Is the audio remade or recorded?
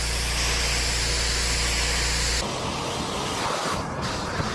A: recorded